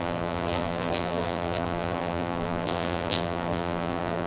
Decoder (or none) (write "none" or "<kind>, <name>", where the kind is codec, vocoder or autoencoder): vocoder, BigVGAN v2